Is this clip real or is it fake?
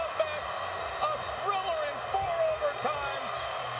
real